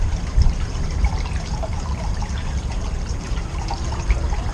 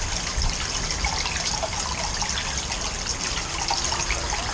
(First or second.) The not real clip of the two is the first